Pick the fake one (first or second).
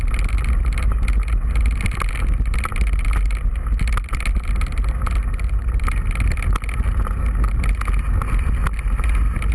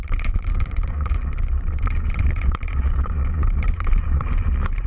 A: second